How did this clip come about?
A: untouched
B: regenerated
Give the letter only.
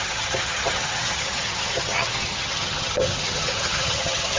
B